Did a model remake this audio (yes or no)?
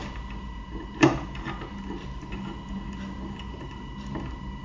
no